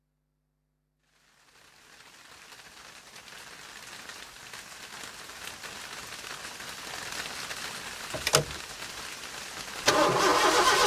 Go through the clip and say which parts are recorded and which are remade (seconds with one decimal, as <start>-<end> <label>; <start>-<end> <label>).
0.0-10.9 recorded